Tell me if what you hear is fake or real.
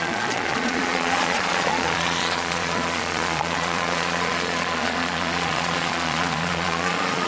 fake